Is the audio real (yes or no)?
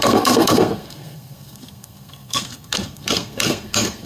no